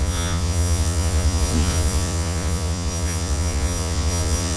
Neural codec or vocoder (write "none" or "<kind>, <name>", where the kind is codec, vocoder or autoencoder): vocoder, Vocos